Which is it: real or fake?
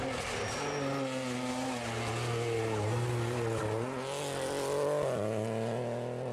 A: real